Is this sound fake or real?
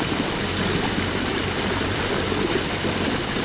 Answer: fake